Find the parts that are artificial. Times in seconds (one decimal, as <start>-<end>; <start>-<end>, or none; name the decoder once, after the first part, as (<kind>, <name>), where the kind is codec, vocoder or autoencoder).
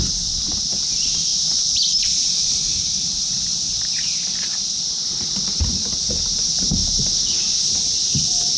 none